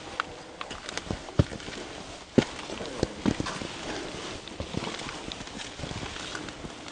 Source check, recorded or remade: recorded